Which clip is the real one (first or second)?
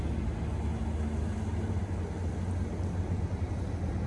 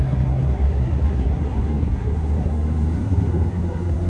first